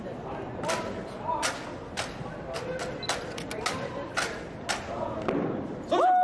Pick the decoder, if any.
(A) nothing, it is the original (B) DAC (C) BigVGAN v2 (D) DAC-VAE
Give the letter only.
A